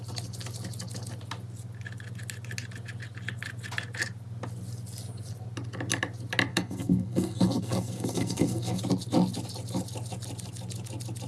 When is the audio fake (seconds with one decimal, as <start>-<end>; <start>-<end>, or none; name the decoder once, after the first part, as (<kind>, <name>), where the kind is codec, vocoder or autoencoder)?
6.5-8.8 (codec, SNAC)